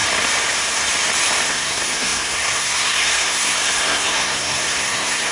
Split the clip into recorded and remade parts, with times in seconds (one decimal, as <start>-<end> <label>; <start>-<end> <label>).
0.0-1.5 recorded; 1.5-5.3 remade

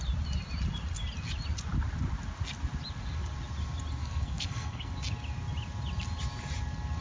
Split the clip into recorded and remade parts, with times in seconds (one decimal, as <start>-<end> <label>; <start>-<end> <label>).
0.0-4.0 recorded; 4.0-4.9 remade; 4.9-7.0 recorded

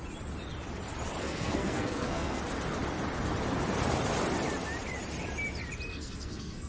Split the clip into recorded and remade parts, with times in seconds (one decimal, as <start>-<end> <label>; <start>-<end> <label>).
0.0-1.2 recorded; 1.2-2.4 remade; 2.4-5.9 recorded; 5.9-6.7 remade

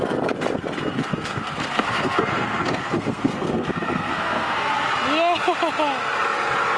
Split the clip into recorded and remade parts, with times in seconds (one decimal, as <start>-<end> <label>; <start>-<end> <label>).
0.0-0.9 recorded; 0.9-4.7 remade; 4.7-6.8 recorded

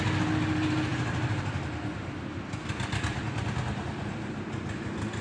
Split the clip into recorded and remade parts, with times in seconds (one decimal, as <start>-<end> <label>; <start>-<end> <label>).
0.0-5.2 recorded